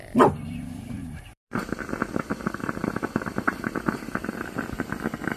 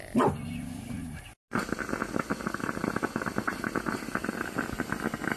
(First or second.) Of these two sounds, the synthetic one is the first